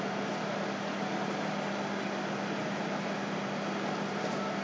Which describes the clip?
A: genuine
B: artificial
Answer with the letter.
A